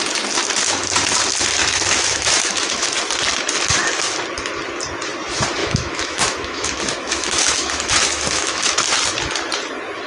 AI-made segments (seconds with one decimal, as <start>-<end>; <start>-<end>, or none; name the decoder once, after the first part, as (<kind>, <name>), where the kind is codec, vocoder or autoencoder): 1.6-3.0 (autoencoder, DAC-VAE); 5.6-8.7